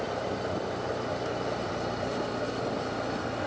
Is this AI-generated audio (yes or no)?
no